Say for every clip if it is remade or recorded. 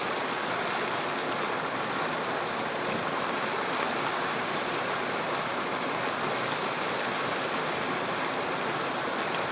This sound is recorded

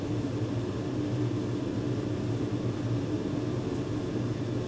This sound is recorded